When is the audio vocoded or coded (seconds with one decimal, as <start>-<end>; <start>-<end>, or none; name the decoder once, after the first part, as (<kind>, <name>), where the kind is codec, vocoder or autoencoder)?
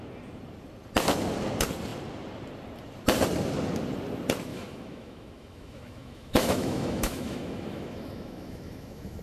4.5-9.2 (autoencoder, DAC-VAE)